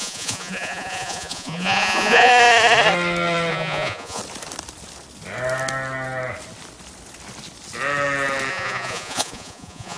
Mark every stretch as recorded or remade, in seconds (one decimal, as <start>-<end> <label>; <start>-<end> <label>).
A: 0.0-2.3 remade; 2.3-3.5 recorded; 3.5-4.2 remade; 4.2-8.5 recorded; 8.5-10.0 remade